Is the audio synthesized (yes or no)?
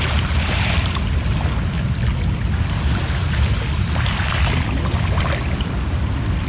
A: no